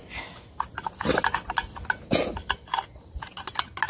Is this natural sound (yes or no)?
yes